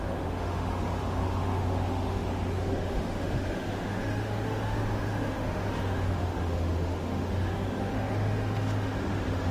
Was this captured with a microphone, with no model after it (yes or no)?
no